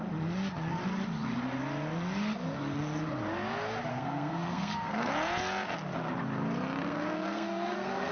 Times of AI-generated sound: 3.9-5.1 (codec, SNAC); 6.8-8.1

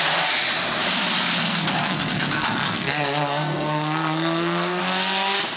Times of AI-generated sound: 1.4-4.8 (codec, SNAC)

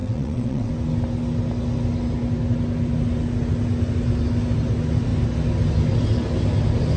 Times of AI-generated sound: 0.0-0.7 (vocoder, WaveNeXt)

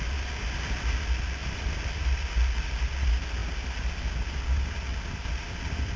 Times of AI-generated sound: 1.4-2.0 (vocoder, BigVGAN v2)

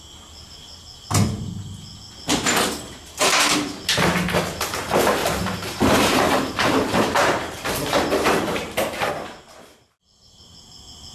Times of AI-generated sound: 5.2-9.1 (vocoder, BigVGAN v2)

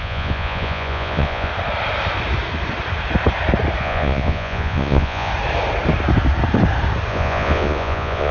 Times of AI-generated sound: 0.0-1.5 (vocoder, Vocos); 3.8-5.3; 7.1-8.3